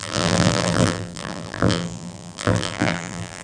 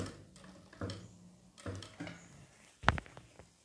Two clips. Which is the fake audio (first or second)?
first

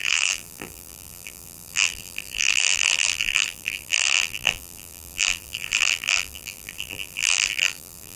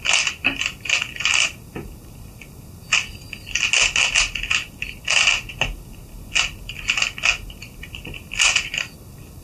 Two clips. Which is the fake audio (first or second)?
first